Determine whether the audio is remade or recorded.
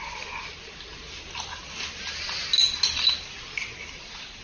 recorded